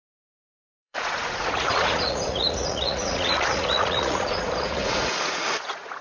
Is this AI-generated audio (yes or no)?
yes